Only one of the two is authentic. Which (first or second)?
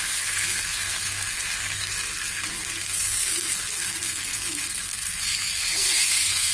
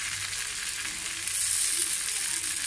second